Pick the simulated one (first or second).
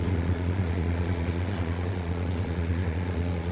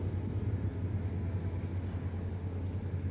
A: first